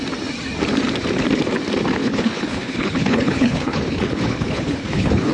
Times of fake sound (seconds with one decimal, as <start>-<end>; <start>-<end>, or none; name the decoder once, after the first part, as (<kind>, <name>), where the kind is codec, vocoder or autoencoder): 2.0-5.3 (codec, HILCodec)